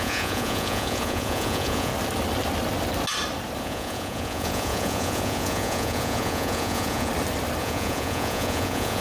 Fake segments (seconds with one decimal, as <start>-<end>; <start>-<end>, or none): 0.0-1.9; 3.6-7.1; 7.6-9.0

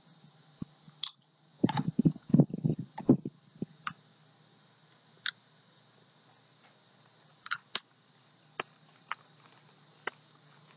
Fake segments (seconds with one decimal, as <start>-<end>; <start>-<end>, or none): 1.5-2.3

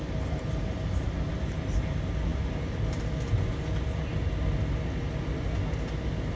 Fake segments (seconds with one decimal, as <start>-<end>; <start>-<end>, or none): none